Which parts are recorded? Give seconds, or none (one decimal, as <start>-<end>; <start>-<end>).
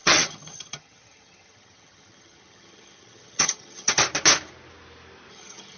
4.0-5.3